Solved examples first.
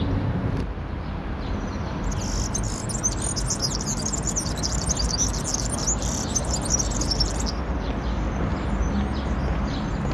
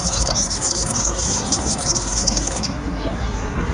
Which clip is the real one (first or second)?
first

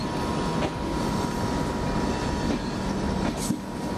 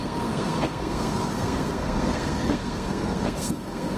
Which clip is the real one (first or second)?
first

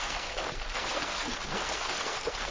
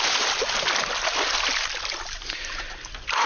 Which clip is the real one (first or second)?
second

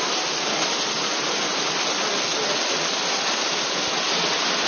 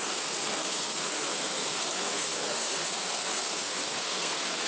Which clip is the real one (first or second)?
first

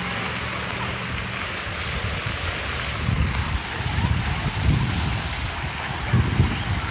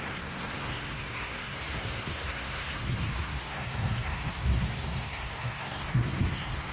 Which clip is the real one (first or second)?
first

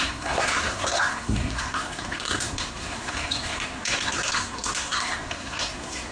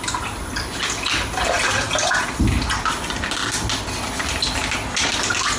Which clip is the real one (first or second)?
second